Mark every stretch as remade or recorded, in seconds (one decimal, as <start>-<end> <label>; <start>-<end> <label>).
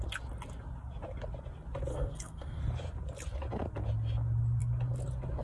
0.0-1.9 recorded; 1.9-2.6 remade; 2.6-5.4 recorded